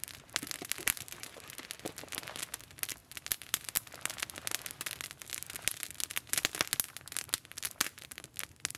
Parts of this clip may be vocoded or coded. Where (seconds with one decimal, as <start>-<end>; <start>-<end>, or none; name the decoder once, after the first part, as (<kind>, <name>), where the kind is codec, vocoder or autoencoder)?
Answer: none